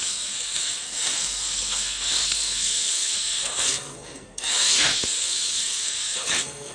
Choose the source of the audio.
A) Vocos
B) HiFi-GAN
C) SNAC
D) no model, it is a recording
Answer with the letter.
C